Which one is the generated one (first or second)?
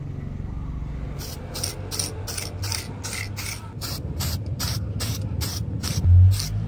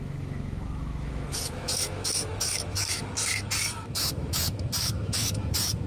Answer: second